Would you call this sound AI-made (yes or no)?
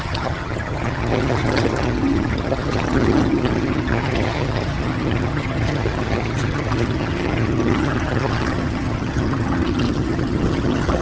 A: yes